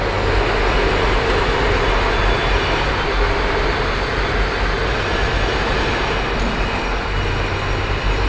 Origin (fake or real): real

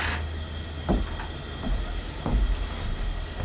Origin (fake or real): real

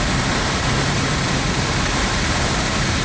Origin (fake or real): fake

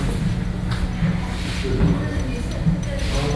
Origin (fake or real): real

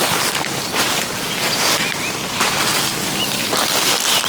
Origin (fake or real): real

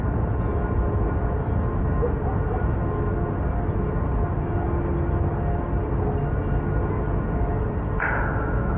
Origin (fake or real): real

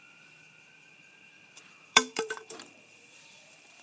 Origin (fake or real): fake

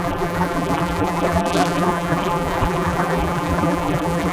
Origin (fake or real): fake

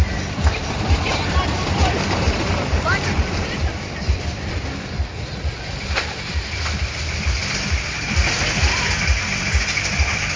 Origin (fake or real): fake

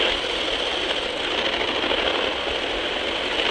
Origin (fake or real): real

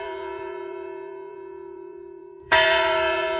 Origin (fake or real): fake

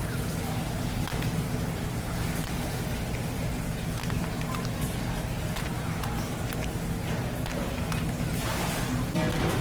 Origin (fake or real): real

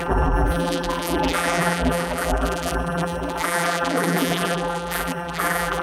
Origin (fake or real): fake